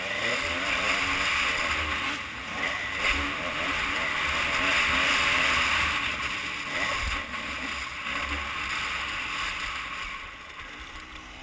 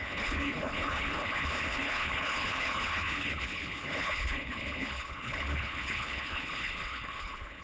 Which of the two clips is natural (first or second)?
first